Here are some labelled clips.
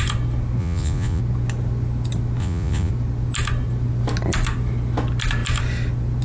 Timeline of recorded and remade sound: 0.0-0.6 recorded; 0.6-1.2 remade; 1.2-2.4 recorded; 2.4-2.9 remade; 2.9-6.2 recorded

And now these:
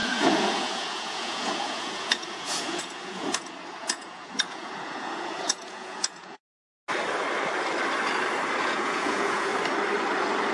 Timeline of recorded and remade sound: 0.0-6.4 remade; 6.4-8.6 recorded; 8.6-9.5 remade; 9.5-10.5 recorded

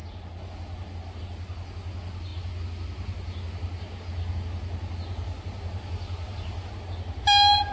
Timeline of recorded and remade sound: 0.0-7.7 recorded

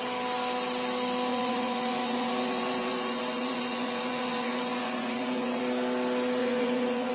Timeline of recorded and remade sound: 0.0-1.3 recorded; 1.3-5.6 remade; 5.6-6.4 recorded; 6.4-7.1 remade

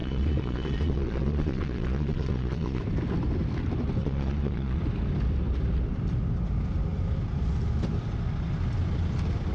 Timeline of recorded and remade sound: 0.0-2.8 remade; 2.8-4.0 recorded; 4.0-4.8 remade; 4.8-9.5 recorded

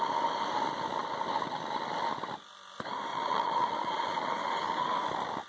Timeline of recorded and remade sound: 0.0-3.1 recorded; 3.1-4.0 remade; 4.0-5.5 recorded

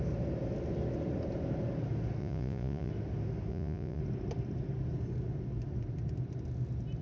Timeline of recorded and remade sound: 0.0-2.2 recorded; 2.2-2.9 remade; 2.9-3.5 recorded; 3.5-4.0 remade; 4.0-7.0 recorded